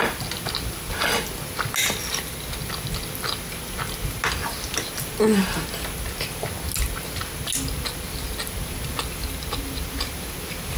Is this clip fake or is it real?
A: real